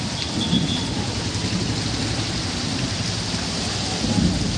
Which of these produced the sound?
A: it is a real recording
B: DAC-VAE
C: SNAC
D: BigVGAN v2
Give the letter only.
A